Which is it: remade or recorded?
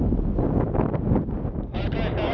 recorded